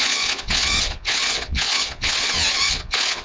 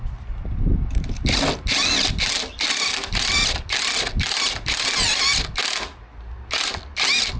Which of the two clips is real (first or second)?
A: second